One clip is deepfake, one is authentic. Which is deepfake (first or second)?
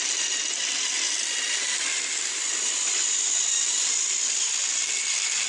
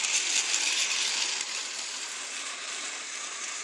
second